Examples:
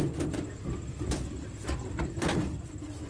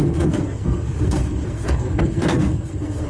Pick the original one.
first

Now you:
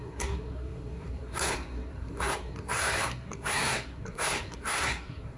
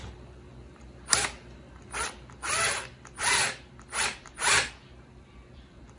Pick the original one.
second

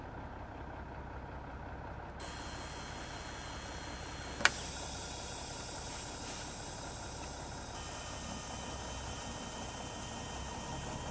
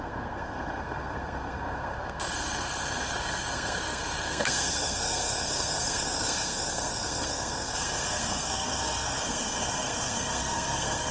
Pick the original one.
first